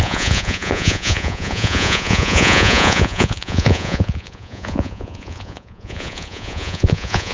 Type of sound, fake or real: fake